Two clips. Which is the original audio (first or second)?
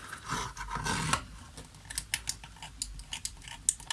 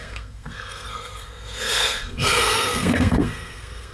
first